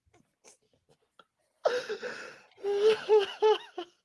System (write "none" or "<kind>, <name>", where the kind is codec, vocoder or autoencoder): none